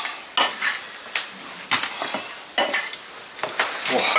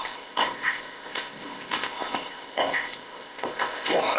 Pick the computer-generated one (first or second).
second